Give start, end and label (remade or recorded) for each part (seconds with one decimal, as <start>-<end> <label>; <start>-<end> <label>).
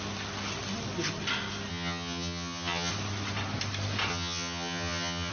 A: 0.0-1.7 recorded; 1.7-2.9 remade; 2.9-4.1 recorded; 4.1-5.3 remade